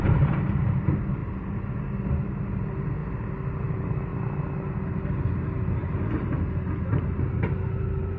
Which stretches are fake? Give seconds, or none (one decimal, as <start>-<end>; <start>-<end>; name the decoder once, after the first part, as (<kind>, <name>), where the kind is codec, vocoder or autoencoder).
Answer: 0.0-3.0 (vocoder, BigVGAN v2); 3.5-4.1; 4.9-8.2